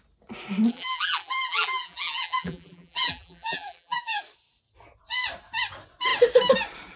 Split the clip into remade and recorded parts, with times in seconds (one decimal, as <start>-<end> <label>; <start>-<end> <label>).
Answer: 0.0-0.7 recorded; 0.7-4.2 remade; 4.2-7.0 recorded